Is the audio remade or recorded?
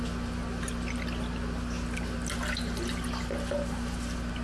recorded